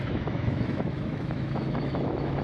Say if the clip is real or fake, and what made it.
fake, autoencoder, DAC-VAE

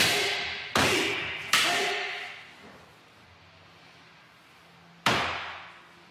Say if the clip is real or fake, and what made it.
real